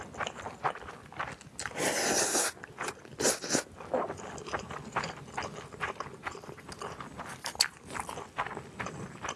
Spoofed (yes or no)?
no